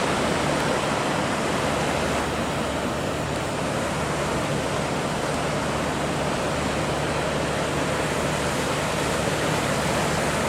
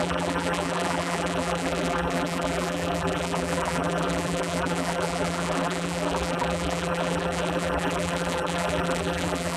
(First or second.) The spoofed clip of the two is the second